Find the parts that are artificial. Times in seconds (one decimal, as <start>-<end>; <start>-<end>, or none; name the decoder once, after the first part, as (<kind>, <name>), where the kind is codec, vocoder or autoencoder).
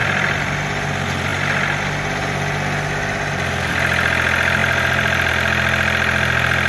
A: 0.0-0.5 (vocoder, BigVGAN v2); 4.6-5.3